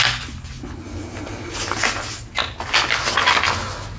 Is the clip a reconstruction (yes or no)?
no